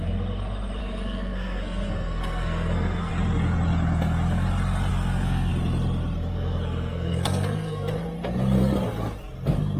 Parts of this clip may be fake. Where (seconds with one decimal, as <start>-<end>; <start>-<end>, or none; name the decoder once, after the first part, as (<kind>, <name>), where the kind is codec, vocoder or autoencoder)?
0.8-3.1 (codec, SNAC); 4.9-5.5; 6.3-7.9